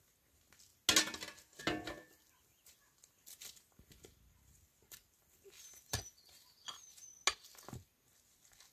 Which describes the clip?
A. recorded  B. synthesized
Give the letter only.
A